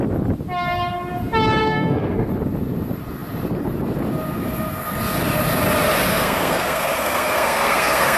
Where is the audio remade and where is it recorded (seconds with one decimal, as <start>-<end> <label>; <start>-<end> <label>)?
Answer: 0.0-1.6 recorded; 1.6-2.3 remade; 2.3-6.1 recorded; 6.1-8.2 remade